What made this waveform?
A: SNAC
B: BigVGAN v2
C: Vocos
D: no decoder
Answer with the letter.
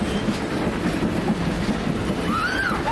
D